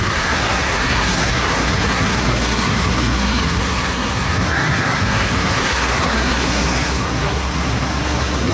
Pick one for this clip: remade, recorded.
remade